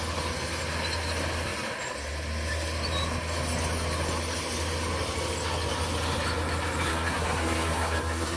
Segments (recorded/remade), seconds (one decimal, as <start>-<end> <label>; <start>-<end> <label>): 0.0-6.9 recorded; 6.9-8.4 remade